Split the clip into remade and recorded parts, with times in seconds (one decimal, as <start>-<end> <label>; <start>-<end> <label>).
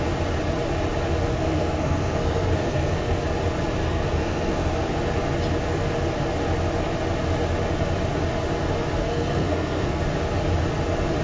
0.0-1.3 recorded; 1.3-3.2 remade; 3.2-3.8 recorded; 3.8-4.7 remade; 4.7-9.1 recorded; 9.1-10.0 remade; 10.0-11.2 recorded